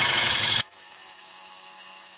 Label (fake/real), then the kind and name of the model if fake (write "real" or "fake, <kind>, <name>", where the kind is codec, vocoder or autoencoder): fake, autoencoder, DAC-VAE